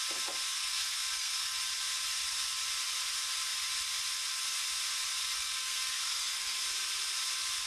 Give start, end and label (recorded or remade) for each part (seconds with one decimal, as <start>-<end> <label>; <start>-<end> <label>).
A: 0.0-0.5 recorded; 0.5-1.6 remade; 1.6-5.2 recorded; 5.2-6.6 remade; 6.6-7.7 recorded